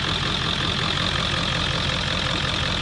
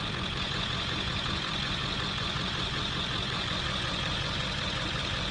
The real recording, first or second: first